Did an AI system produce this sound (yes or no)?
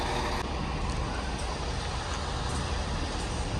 no